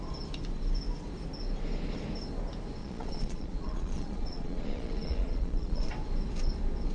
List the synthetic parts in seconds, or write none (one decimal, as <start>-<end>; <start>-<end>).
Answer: 2.8-5.9